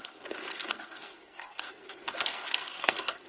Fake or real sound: fake